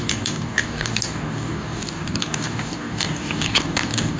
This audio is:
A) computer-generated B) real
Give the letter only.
A